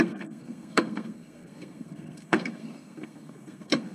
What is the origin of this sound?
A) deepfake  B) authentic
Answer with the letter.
A